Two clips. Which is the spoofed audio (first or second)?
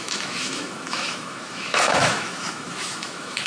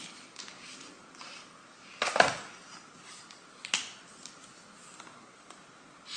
first